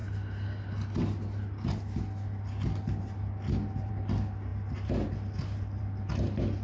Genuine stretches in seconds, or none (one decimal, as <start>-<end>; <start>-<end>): 0.0-6.6